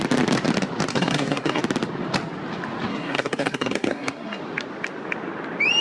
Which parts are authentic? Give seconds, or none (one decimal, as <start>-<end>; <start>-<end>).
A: 0.0-0.9; 1.6-2.9; 4.4-5.8